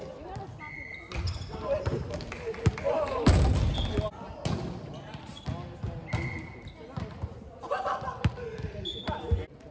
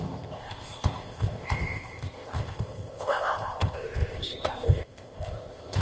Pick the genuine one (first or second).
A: first